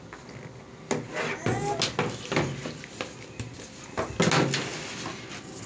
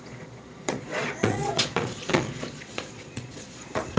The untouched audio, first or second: first